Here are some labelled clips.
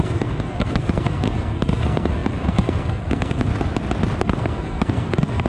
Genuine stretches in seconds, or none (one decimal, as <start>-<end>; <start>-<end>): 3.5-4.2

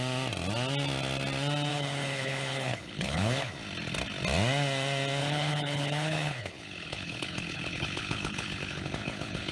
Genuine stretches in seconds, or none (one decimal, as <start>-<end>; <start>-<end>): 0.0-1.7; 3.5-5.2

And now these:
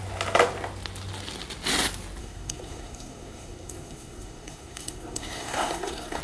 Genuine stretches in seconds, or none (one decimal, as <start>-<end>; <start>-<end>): 0.0-2.2

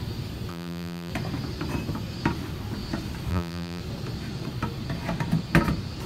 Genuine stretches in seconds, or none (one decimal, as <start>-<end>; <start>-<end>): 0.0-0.5; 1.1-3.3; 3.8-6.1

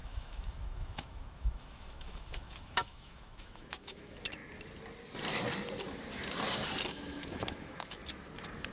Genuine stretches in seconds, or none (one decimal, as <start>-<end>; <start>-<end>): 4.4-6.9; 8.0-8.7

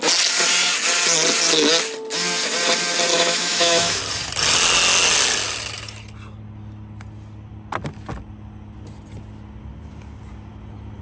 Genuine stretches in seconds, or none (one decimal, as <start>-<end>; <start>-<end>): 0.0-3.1; 4.0-11.0

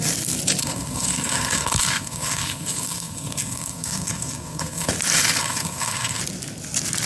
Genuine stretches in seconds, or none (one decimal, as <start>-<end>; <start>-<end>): 0.0-0.6; 4.9-5.4; 6.2-7.1

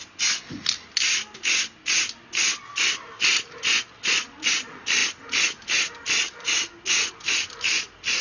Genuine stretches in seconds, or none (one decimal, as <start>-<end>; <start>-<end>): 0.0-8.2